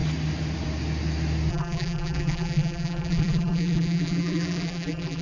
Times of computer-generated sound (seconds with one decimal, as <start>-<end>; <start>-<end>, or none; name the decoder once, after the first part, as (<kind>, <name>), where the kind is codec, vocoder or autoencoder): 1.5-5.2 (vocoder, BigVGAN v2)